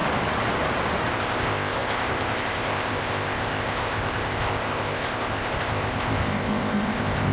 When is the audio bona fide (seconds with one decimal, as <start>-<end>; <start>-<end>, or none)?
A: 0.0-1.1